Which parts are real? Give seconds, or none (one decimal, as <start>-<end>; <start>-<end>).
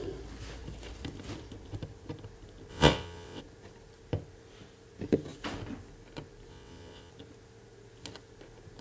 0.0-2.7; 3.4-6.5; 7.1-8.8